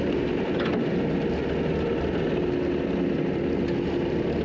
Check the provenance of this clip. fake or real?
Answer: real